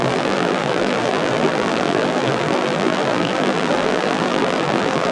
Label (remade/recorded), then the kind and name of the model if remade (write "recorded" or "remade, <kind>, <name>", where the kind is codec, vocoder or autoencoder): remade, vocoder, BigVGAN v2